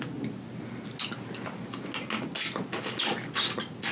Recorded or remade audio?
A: recorded